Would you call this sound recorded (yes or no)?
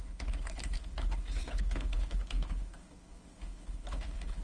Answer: no